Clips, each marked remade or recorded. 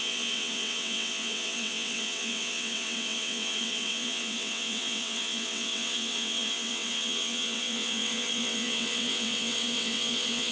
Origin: remade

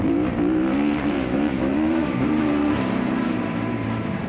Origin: remade